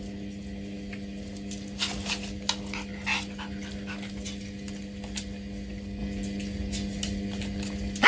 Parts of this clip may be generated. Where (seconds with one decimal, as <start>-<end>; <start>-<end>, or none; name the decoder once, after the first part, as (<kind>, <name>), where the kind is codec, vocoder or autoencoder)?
none